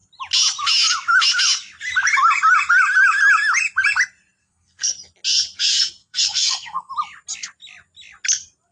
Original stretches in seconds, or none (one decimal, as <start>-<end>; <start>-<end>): 0.0-4.4; 4.9-6.0; 6.9-8.7